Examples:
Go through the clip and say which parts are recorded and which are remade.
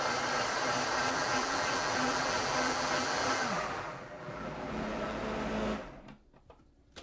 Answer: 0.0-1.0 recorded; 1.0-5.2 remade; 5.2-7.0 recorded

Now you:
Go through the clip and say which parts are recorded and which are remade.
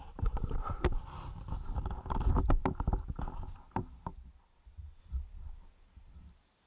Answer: 0.0-2.6 remade; 2.6-3.2 recorded; 3.2-4.1 remade; 4.1-5.0 recorded; 5.0-6.7 remade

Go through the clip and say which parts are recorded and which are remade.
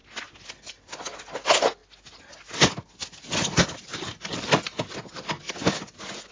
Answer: 0.0-3.9 recorded; 3.9-4.7 remade; 4.7-6.3 recorded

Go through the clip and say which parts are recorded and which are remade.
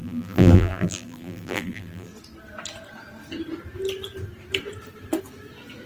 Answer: 0.0-2.1 remade; 2.1-5.9 recorded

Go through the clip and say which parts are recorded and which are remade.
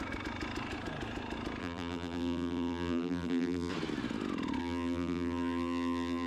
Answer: 0.0-1.6 recorded; 1.6-3.7 remade; 3.7-4.6 recorded; 4.6-6.3 remade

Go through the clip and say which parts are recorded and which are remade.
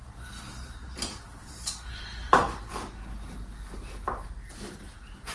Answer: 0.0-0.8 recorded; 0.8-2.5 remade; 2.5-5.3 recorded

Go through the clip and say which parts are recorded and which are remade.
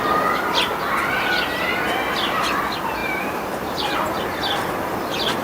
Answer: 0.0-3.0 recorded; 3.0-4.7 remade; 4.7-5.4 recorded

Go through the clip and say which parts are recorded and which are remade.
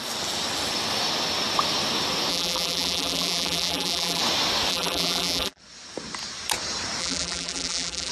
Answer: 0.0-2.3 recorded; 2.3-4.2 remade; 4.2-4.7 recorded; 4.7-5.6 remade; 5.6-7.0 recorded; 7.0-8.1 remade